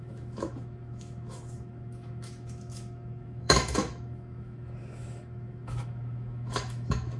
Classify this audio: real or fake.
fake